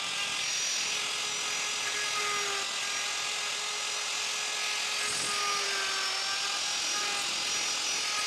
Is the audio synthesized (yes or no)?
no